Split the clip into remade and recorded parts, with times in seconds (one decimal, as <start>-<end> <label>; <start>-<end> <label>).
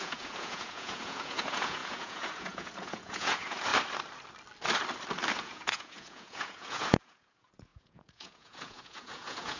0.0-3.7 remade; 3.7-5.4 recorded; 5.4-9.6 remade